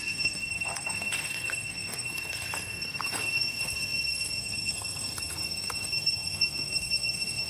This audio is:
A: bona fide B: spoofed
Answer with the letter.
B